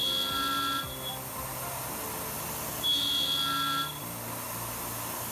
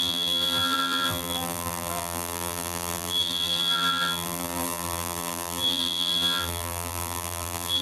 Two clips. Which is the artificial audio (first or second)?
second